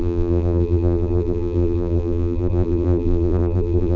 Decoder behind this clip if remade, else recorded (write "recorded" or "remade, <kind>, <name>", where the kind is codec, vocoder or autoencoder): remade, vocoder, BigVGAN v2